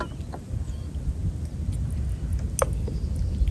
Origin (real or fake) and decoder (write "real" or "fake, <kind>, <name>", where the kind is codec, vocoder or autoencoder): real